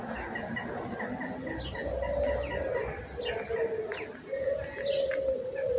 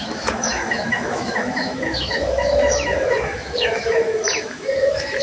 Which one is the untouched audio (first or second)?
first